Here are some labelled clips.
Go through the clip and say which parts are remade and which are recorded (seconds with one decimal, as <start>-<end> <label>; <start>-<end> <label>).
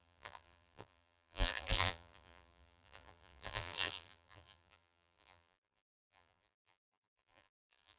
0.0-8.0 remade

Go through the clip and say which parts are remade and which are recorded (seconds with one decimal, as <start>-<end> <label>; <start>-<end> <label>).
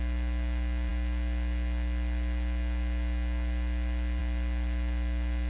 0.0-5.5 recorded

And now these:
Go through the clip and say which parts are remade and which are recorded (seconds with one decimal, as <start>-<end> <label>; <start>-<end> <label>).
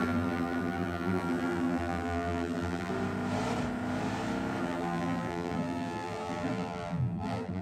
0.0-2.9 remade; 2.9-4.6 recorded; 4.6-7.6 remade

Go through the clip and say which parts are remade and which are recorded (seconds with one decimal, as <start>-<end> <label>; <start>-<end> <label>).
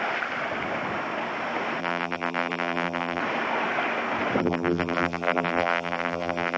0.0-1.8 recorded; 1.8-3.2 remade; 3.2-4.4 recorded; 4.4-6.6 remade